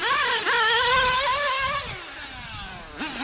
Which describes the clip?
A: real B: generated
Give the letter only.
A